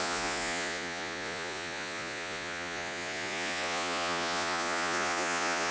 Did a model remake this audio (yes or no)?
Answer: yes